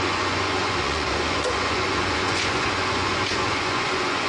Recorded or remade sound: remade